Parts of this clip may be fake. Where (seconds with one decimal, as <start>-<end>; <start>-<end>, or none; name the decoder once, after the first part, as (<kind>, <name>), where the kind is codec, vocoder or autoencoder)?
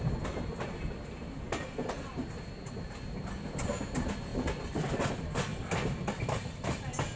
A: 4.3-5.1 (vocoder, BigVGAN v2); 5.5-6.6